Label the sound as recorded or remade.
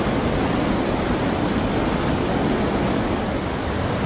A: recorded